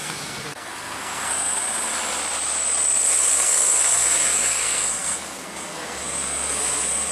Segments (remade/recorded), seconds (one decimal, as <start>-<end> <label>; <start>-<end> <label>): 0.0-1.6 remade; 1.6-3.3 recorded; 3.3-7.1 remade